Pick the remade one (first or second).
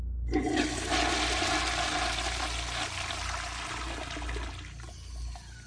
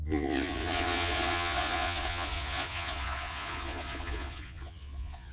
second